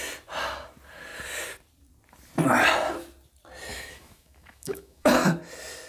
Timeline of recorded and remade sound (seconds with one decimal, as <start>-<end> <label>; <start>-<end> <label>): 0.0-3.7 recorded; 3.7-5.4 remade; 5.4-5.9 recorded